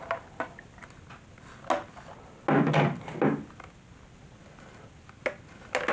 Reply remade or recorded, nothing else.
recorded